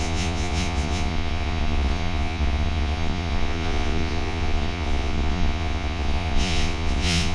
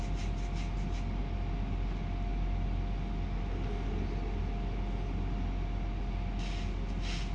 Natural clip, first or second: second